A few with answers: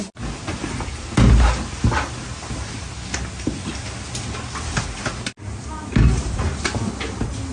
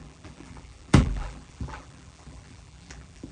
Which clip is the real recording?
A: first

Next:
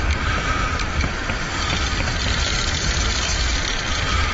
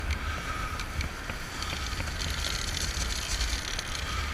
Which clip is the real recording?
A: second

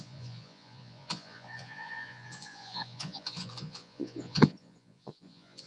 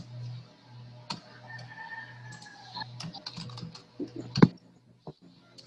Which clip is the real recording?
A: second